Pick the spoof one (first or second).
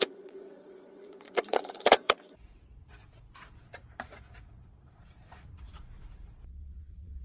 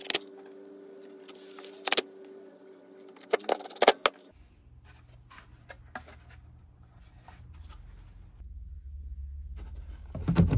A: first